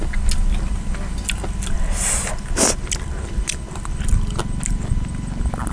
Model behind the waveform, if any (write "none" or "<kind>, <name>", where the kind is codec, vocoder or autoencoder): none